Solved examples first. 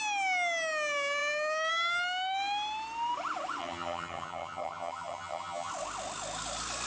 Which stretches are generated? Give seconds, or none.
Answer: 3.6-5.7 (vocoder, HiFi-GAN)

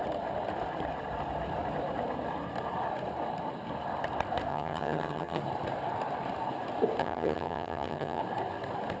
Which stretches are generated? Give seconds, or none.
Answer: 4.5-5.4 (vocoder, HiFi-GAN); 7.0-8.2

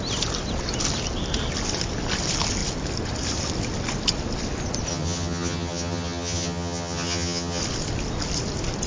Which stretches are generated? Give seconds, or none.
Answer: 4.9-7.6 (vocoder, HiFi-GAN)

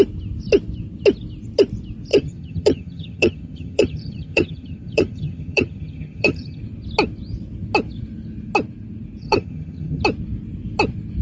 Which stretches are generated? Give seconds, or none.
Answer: 2.1-6.6 (vocoder, HiFi-GAN); 9.2-10.0

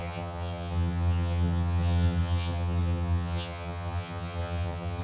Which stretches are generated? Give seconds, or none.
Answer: 0.0-5.0 (vocoder, HiFi-GAN)